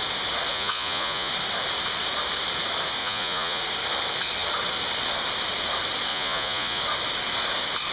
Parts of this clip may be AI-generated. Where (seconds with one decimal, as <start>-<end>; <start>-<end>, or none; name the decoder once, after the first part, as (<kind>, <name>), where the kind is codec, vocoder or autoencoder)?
0.5-1.3 (vocoder, Vocos); 3.0-3.6; 6.1-6.8